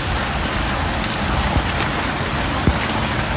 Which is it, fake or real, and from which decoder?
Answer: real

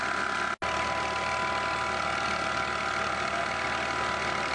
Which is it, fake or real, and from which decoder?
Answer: real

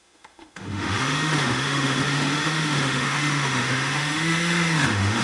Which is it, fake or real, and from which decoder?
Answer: fake, autoencoder, DAC-VAE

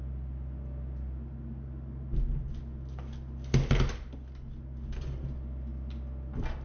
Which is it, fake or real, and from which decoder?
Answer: real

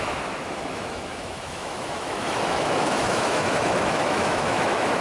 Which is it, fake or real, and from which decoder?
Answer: fake, autoencoder, DAC-VAE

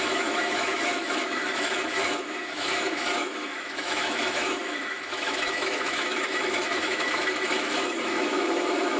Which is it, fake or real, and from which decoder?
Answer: fake, autoencoder, DAC-VAE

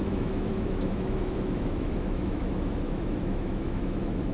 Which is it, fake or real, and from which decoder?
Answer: fake, autoencoder, DAC-VAE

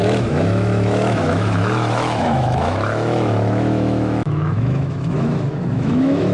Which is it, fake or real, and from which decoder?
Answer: fake, autoencoder, DAC-VAE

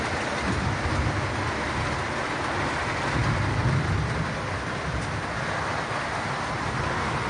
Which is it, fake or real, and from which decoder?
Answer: real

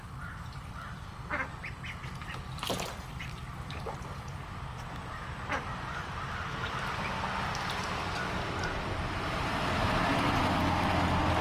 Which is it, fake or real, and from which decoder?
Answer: real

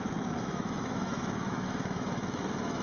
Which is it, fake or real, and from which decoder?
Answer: fake, autoencoder, DAC-VAE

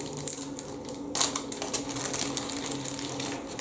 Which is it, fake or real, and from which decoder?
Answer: real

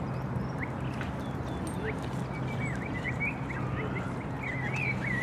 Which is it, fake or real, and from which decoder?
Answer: real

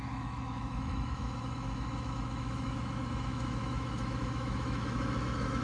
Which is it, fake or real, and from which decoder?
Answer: fake, autoencoder, DAC-VAE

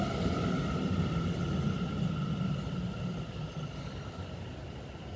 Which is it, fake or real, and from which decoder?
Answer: real